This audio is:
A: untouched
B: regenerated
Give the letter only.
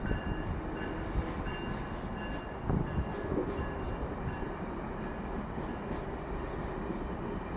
A